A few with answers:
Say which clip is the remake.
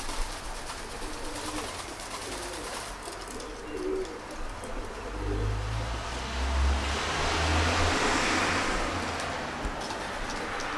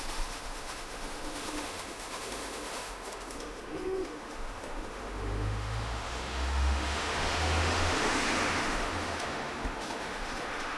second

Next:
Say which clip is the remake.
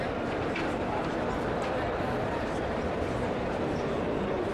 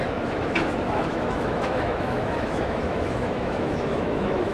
second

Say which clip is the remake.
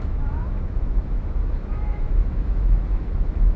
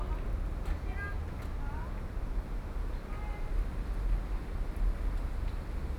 first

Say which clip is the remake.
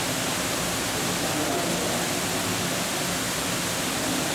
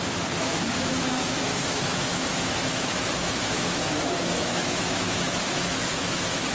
second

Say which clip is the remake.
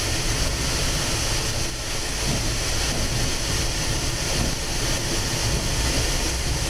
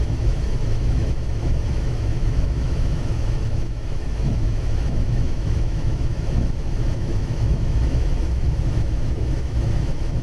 second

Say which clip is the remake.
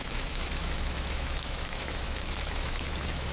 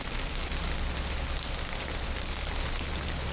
first